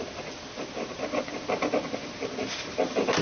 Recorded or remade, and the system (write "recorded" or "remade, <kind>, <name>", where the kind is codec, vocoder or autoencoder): recorded